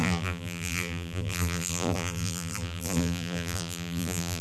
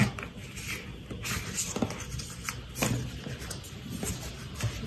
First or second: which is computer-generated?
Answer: first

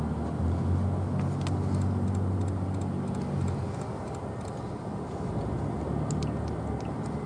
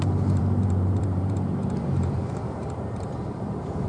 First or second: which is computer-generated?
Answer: second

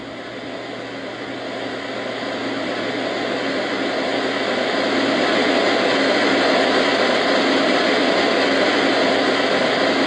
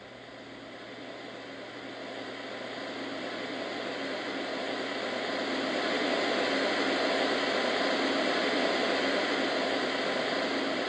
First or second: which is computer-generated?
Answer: second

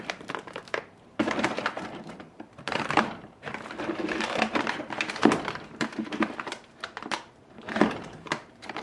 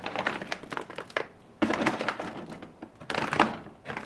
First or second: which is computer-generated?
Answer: first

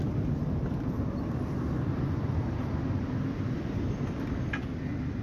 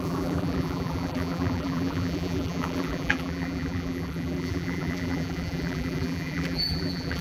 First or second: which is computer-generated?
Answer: second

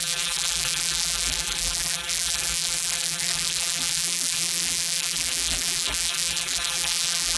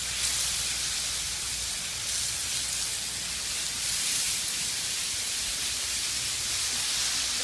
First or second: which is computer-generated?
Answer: first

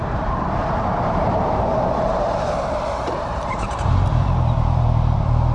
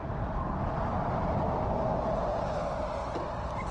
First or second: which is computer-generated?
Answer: first